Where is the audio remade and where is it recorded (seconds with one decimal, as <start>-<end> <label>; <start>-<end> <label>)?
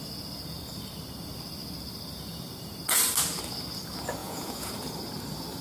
0.0-4.2 recorded; 4.2-4.7 remade; 4.7-5.6 recorded